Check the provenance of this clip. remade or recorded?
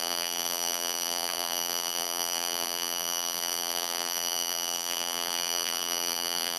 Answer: remade